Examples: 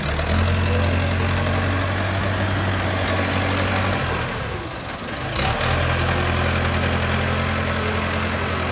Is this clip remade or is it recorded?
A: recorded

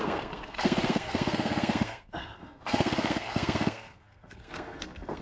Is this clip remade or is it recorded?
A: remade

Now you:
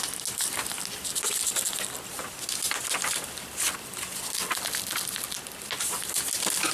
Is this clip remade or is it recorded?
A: recorded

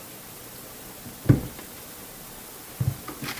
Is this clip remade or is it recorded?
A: recorded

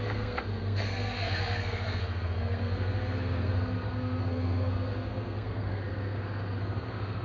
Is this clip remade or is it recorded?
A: remade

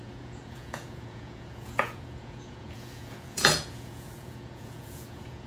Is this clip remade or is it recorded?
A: remade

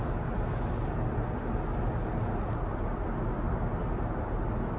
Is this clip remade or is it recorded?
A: recorded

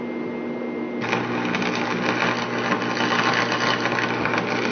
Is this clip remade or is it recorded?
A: recorded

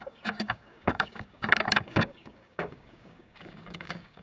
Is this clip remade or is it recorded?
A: remade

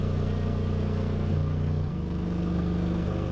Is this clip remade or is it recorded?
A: remade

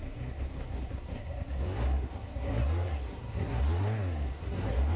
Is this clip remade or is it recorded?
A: remade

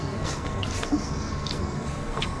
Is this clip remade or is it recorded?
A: remade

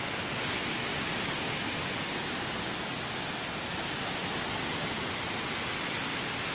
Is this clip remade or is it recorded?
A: recorded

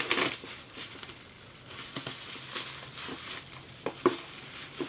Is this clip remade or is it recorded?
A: recorded